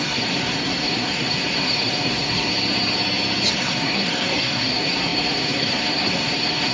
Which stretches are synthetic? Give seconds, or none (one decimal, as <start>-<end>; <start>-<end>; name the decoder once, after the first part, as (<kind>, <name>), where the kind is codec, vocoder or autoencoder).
0.0-2.5 (codec, SNAC); 3.5-6.7